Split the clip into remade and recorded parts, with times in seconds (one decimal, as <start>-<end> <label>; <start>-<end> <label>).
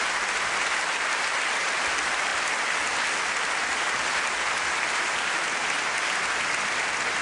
0.0-7.2 recorded